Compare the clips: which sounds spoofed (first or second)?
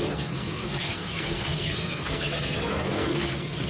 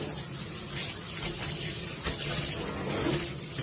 first